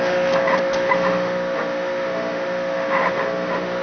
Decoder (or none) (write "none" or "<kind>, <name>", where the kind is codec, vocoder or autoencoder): autoencoder, DAC-VAE